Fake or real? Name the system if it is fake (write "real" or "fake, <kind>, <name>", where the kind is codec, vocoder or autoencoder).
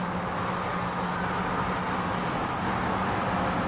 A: real